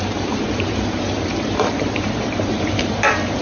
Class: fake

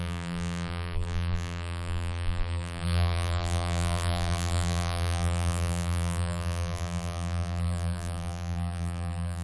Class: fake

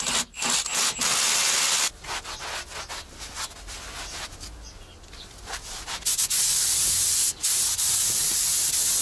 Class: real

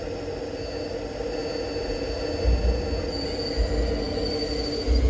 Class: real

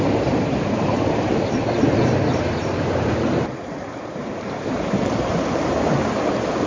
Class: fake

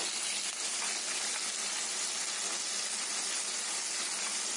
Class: real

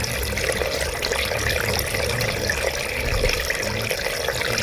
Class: real